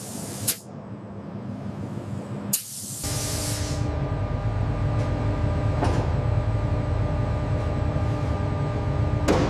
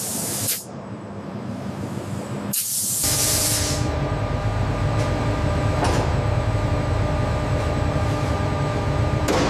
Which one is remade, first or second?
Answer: second